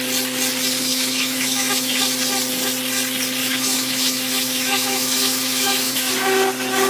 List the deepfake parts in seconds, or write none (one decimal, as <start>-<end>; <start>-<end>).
0.9-2.0; 3.4-6.1